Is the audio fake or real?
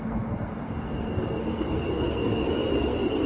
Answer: fake